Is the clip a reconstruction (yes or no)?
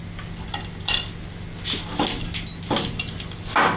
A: no